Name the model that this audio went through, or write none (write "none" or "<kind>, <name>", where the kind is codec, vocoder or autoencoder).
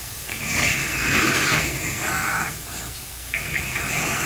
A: codec, SNAC